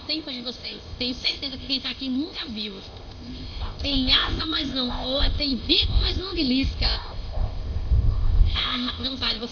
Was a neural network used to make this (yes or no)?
yes